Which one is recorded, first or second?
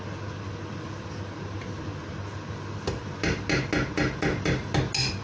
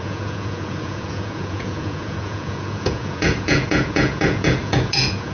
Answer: first